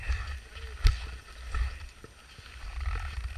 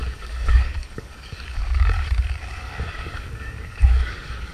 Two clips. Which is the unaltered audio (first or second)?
first